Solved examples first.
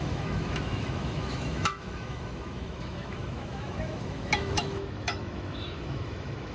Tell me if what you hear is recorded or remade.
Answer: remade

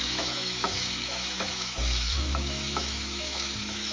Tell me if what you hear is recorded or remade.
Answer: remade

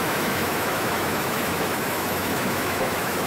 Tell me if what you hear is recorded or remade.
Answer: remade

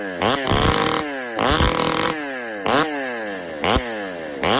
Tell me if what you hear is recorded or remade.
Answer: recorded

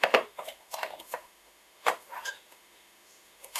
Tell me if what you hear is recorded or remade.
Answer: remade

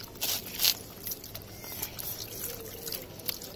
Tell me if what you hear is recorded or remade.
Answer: recorded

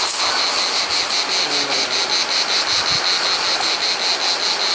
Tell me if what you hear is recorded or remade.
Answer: recorded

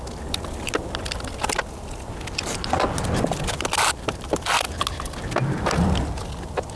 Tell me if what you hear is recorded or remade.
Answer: recorded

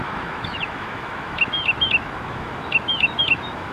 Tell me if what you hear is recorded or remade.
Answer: remade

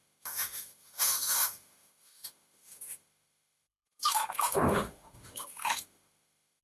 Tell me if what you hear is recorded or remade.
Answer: remade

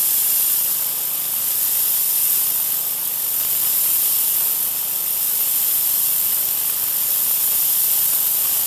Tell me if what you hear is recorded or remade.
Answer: recorded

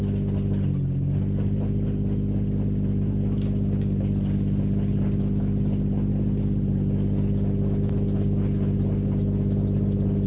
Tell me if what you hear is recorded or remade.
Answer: recorded